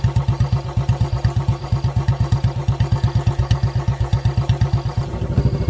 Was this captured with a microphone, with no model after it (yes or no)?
yes